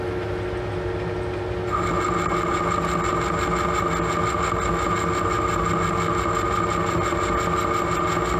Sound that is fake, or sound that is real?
real